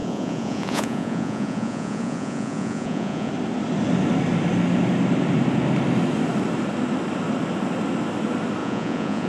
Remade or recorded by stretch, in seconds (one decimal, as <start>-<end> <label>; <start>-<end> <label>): 0.0-3.3 remade; 3.3-8.6 recorded; 8.6-9.3 remade